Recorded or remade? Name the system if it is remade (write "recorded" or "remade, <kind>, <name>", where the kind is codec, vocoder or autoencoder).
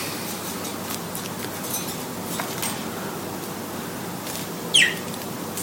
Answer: recorded